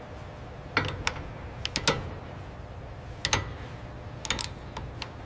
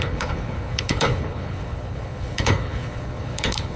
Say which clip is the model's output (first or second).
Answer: second